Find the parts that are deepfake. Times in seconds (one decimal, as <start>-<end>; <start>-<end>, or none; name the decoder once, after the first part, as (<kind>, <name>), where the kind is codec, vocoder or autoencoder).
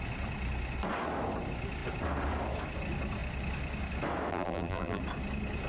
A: 4.3-5.0 (vocoder, BigVGAN v2)